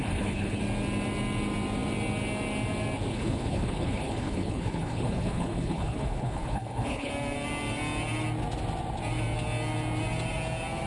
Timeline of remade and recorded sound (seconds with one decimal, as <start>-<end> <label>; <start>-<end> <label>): 0.0-0.6 remade; 0.6-3.1 recorded; 3.1-7.1 remade; 7.1-10.9 recorded